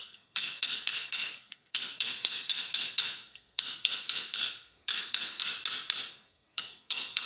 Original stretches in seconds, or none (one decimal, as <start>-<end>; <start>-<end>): 5.5-6.1